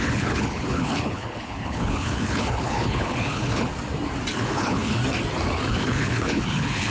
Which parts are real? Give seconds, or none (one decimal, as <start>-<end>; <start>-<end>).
3.7-4.3; 5.0-5.7